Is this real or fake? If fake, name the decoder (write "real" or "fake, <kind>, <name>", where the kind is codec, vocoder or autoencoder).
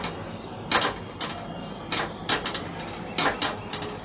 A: real